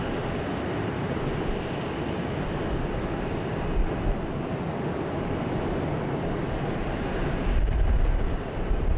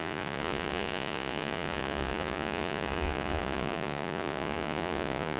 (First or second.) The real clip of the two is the first